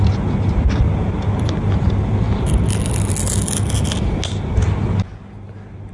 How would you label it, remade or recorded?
recorded